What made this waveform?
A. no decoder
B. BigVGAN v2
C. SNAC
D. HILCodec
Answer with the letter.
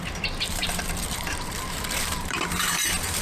B